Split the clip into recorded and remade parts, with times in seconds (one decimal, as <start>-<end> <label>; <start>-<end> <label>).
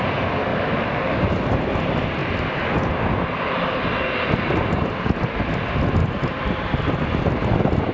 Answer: 0.0-0.5 recorded; 0.5-1.2 remade; 1.2-7.9 recorded